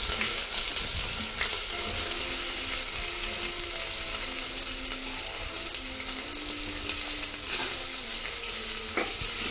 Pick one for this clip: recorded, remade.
recorded